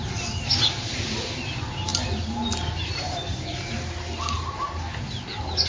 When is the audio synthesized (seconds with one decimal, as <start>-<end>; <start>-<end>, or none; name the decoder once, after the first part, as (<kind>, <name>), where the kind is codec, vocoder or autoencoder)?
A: none